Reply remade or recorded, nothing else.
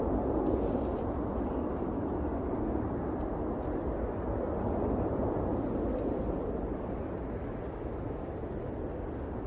recorded